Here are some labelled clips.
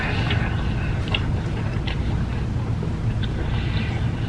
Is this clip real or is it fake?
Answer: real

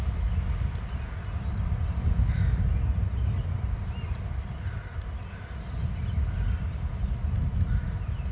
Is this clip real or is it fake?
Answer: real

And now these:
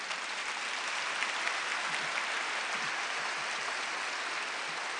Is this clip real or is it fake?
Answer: fake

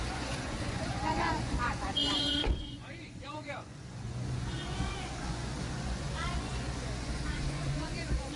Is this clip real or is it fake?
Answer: fake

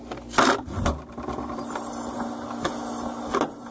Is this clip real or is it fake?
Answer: real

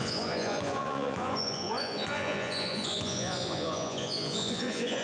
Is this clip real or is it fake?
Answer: fake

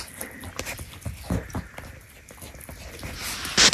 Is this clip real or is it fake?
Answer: real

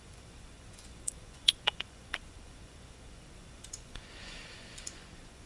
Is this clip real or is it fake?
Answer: fake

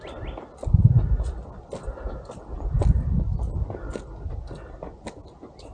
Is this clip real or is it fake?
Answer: real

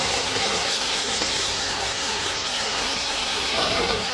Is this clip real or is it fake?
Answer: fake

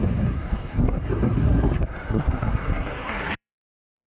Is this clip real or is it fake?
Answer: fake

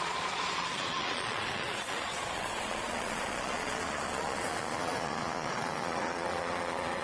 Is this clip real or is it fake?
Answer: fake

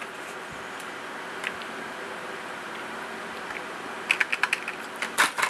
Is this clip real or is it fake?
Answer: real